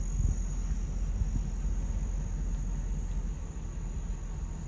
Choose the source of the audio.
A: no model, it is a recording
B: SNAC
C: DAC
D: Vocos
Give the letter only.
A